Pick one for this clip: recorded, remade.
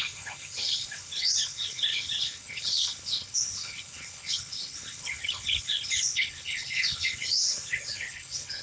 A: remade